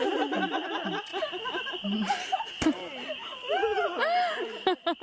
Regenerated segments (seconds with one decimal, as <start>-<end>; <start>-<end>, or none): none